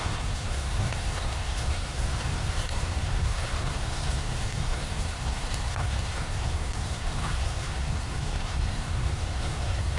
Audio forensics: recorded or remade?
remade